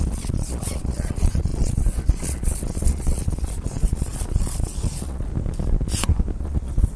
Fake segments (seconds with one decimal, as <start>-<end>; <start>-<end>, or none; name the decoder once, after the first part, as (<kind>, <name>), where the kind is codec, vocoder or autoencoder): 0.0-5.3 (vocoder, Vocos); 6.4-7.0